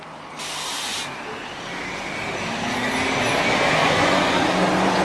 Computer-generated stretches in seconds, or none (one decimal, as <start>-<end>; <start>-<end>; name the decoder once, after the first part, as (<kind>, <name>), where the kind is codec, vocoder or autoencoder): 3.8-4.4 (vocoder, Vocos)